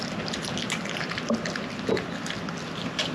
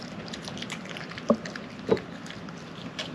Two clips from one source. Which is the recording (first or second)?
first